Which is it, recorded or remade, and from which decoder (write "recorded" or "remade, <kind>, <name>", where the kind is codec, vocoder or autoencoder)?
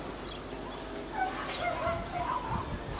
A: recorded